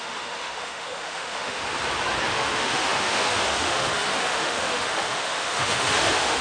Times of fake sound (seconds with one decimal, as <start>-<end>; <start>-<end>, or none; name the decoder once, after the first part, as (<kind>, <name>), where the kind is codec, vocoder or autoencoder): 0.0-1.6 (autoencoder, DAC-VAE); 2.3-6.4